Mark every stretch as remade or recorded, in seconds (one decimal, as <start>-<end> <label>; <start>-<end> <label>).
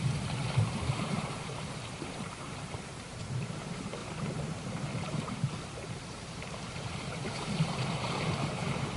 0.0-9.0 remade